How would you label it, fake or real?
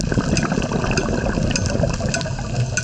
real